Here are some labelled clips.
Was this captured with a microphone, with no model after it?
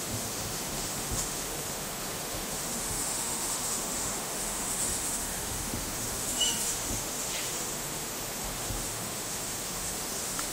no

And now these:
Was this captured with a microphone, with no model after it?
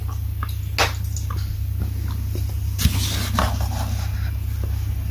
yes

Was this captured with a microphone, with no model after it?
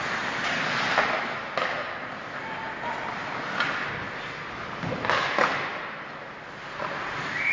yes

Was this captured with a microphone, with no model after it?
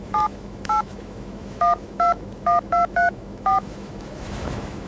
no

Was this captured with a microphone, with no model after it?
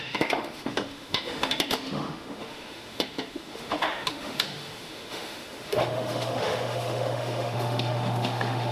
no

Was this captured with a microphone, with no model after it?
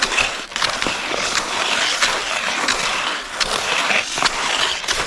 yes